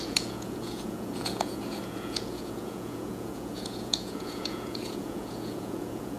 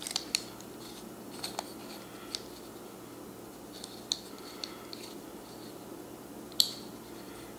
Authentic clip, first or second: second